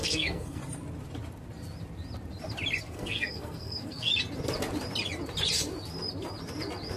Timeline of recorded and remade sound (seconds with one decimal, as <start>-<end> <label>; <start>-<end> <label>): 0.0-0.6 remade; 0.6-2.8 recorded; 2.8-4.1 remade; 4.1-7.0 recorded